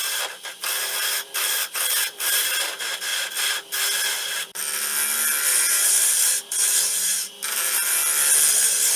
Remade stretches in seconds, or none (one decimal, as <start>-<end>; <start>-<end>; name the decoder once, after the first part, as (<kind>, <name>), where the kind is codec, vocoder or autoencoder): 0.0-3.1 (vocoder, BigVGAN v2); 4.1-4.6; 5.5-8.0; 8.5-9.0